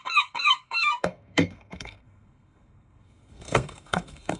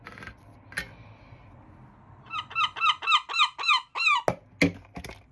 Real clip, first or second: second